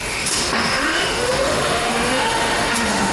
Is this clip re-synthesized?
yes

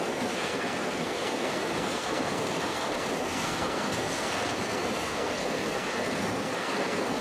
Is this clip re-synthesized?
yes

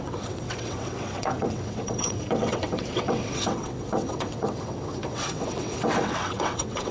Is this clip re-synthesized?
yes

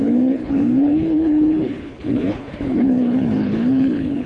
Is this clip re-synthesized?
yes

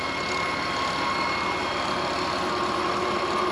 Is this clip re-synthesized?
no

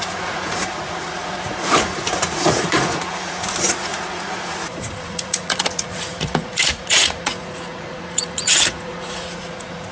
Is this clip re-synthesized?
yes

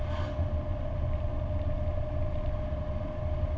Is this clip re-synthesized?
no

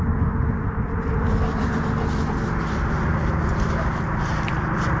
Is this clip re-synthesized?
no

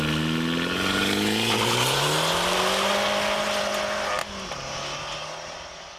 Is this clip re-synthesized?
no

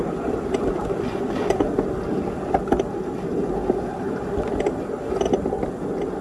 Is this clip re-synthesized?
no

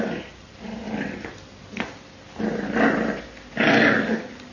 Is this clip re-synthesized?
no